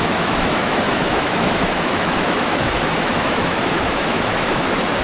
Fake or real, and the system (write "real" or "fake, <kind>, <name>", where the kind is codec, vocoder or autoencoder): fake, autoencoder, DAC-VAE